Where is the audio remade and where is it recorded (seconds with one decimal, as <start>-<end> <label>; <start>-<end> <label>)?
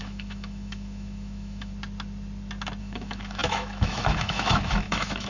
0.0-1.7 remade; 1.7-2.8 recorded; 2.8-5.3 remade